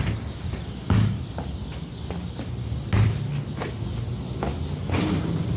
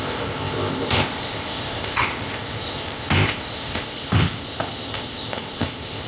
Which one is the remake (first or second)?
second